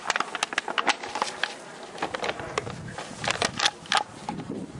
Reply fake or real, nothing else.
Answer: real